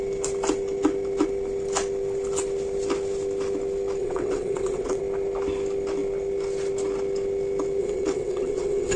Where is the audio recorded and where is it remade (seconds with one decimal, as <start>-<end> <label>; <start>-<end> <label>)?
0.0-4.0 recorded; 4.0-5.0 remade; 5.0-7.8 recorded; 7.8-9.0 remade